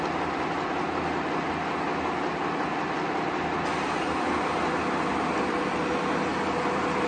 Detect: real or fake real